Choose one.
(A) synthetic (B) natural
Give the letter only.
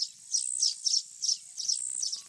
B